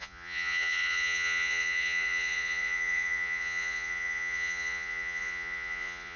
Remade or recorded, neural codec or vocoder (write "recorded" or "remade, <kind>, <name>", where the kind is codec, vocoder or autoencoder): remade, vocoder, Vocos